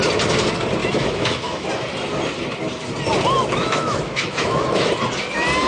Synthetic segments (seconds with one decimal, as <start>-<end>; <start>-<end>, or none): 0.8-1.7; 3.4-4.9